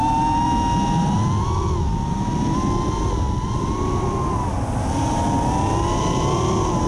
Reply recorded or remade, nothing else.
recorded